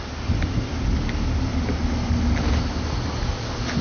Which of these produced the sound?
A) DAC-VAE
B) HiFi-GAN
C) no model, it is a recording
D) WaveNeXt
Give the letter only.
C